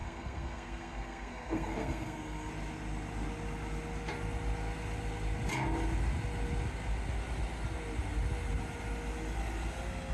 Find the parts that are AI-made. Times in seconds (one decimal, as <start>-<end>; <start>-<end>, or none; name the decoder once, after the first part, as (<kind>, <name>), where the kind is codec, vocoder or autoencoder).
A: 0.0-2.5 (codec, SNAC)